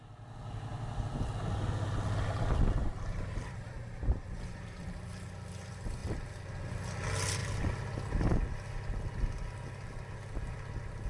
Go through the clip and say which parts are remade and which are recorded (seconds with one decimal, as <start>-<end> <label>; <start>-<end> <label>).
0.0-2.8 recorded; 2.8-5.3 remade; 5.3-11.1 recorded